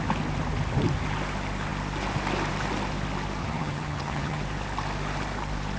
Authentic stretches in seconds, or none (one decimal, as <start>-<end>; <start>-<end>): 0.0-3.4; 4.4-5.8